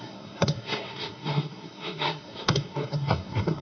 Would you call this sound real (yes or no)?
no